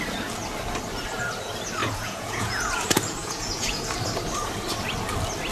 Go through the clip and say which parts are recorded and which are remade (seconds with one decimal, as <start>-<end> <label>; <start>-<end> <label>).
0.0-1.8 recorded; 1.8-2.7 remade; 2.7-3.2 recorded; 3.2-3.9 remade; 3.9-5.5 recorded